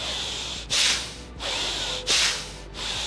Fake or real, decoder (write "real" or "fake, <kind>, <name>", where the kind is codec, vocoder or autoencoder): real